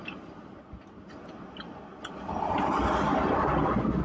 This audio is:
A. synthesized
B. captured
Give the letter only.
B